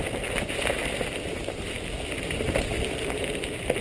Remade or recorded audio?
recorded